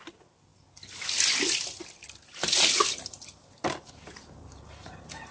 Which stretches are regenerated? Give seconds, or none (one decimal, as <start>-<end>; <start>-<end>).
none